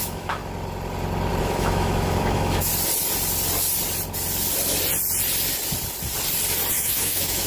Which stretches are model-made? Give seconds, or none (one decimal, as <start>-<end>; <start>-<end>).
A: 0.0-0.4; 1.4-2.7; 6.7-7.5